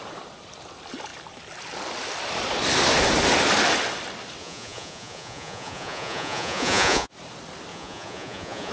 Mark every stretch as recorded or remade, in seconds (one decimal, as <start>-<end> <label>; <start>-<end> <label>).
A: 0.0-4.4 recorded; 4.4-7.1 remade; 7.1-7.7 recorded; 7.7-8.7 remade